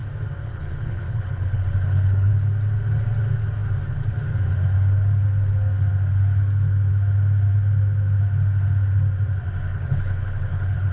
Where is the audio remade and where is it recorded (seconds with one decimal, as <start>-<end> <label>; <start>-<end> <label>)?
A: 0.0-0.4 recorded; 0.4-2.3 remade; 2.3-9.7 recorded; 9.7-10.9 remade